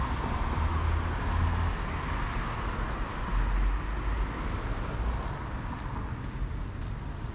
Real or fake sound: real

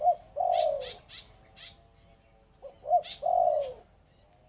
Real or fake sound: real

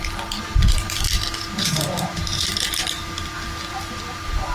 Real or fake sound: real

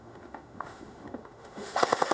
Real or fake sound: fake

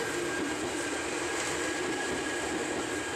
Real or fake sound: real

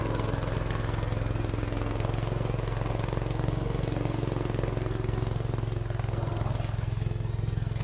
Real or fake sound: fake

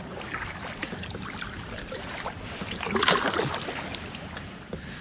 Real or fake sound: real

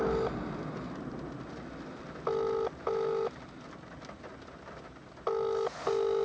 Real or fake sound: real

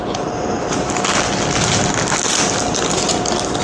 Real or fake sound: real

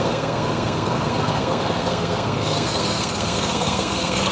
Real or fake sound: fake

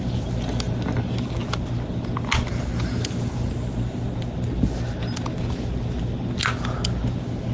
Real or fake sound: real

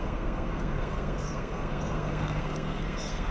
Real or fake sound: fake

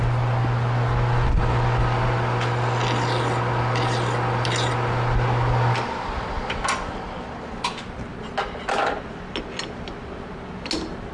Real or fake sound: real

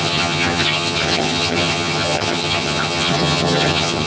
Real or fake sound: fake